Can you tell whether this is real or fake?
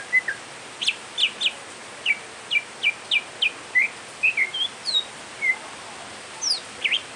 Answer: real